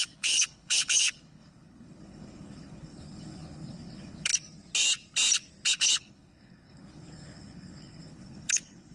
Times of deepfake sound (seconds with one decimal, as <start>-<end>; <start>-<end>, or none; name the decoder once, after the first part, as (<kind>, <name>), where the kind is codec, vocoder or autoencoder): 0.0-4.3 (codec, HILCodec); 5.7-8.9